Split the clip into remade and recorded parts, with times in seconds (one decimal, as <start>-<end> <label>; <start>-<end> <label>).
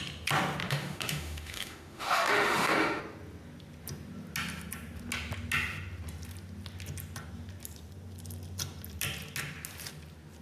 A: 0.0-0.6 recorded; 0.6-3.0 remade; 3.0-10.4 recorded